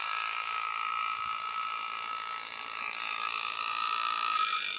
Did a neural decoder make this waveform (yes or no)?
yes